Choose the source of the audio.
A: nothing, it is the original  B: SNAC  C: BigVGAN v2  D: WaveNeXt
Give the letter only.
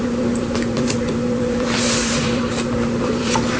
C